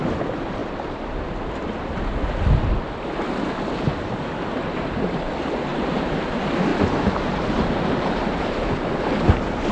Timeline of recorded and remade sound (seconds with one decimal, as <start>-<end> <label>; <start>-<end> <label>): 0.0-5.7 recorded; 5.7-6.3 remade; 6.3-6.7 recorded; 6.7-9.7 remade